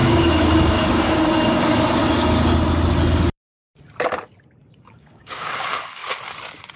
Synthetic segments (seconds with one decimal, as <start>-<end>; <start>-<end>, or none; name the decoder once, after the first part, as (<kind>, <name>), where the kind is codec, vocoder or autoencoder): 0.0-2.0 (codec, DAC); 4.8-6.0